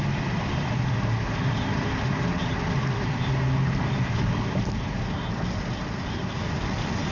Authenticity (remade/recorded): recorded